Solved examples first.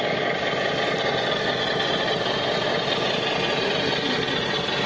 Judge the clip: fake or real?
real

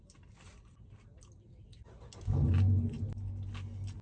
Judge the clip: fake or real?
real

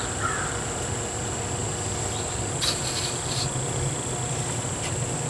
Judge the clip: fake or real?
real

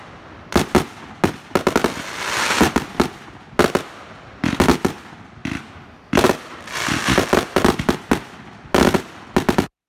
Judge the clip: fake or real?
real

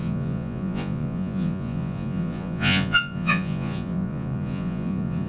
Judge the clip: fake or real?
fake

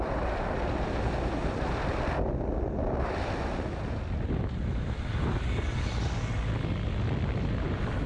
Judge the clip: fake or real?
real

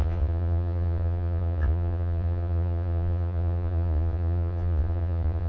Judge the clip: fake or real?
fake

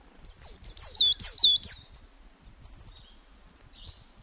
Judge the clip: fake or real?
real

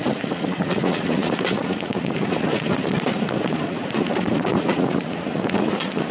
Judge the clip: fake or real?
fake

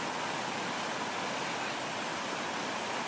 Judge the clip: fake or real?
real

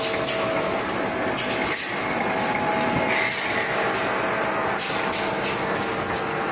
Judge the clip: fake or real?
real